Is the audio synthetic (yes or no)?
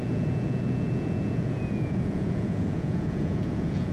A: yes